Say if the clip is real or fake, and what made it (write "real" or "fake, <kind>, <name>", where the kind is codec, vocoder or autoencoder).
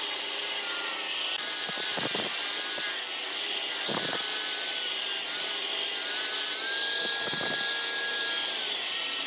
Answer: real